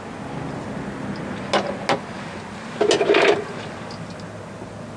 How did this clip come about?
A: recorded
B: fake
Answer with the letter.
A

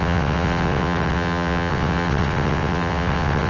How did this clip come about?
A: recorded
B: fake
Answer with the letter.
B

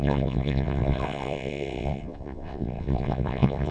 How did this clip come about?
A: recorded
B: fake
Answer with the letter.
B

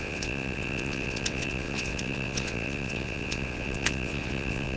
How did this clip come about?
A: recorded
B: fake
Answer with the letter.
B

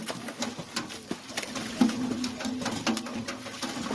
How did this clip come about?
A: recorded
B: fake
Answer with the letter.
A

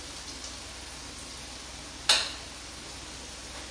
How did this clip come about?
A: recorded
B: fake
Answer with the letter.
A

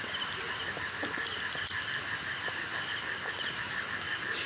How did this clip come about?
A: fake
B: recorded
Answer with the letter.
B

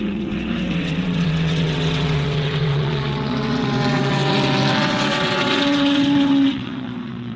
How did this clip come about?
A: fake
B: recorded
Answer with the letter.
A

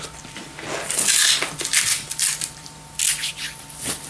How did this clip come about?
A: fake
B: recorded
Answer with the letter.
B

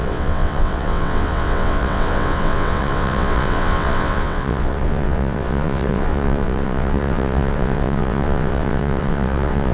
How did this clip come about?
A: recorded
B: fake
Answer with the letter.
B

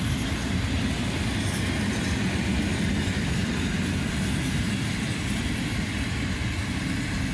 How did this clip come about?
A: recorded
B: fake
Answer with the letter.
A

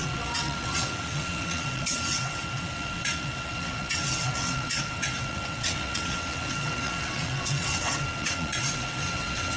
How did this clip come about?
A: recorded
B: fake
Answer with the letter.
B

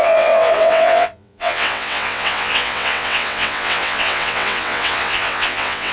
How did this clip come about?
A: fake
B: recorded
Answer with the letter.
A